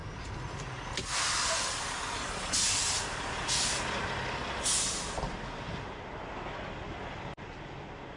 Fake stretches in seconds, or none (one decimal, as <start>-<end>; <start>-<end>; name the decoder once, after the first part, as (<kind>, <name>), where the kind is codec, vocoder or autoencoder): none